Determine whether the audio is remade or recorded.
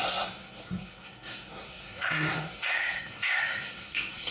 remade